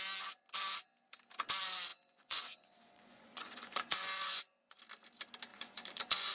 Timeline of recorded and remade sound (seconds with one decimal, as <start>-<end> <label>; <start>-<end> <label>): 0.0-1.9 recorded; 1.9-4.8 remade; 4.8-5.5 recorded; 5.5-6.3 remade